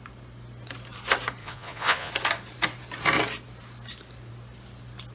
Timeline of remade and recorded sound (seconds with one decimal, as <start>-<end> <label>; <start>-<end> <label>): 0.0-1.4 recorded; 1.4-2.1 remade; 2.1-5.1 recorded